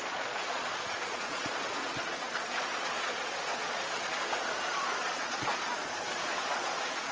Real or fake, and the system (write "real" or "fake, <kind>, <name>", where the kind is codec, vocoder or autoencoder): fake, vocoder, Vocos